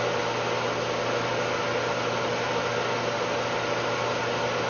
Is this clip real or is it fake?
real